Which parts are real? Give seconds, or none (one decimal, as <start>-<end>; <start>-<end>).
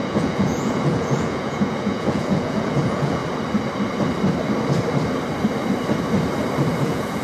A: 3.2-6.8